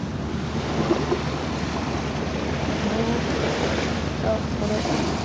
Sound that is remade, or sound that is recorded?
remade